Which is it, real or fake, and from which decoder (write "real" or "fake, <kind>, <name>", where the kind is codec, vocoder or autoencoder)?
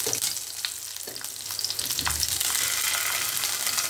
real